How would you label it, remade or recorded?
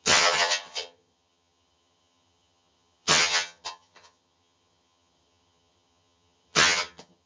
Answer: remade